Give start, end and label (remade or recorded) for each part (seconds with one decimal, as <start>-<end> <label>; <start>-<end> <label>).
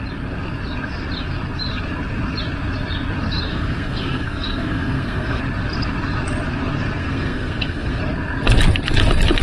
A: 0.0-3.5 recorded; 3.5-5.4 remade; 5.4-7.0 recorded; 7.0-8.0 remade; 8.0-9.4 recorded